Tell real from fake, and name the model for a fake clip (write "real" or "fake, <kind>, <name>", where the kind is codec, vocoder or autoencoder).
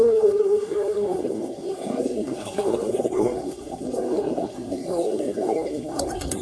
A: fake, codec, SNAC